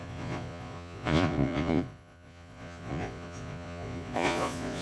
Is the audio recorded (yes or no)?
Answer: no